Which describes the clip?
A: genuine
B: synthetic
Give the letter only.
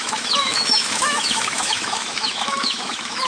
B